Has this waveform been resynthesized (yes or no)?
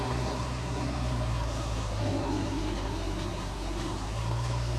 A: yes